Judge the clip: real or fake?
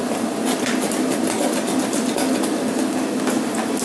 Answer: real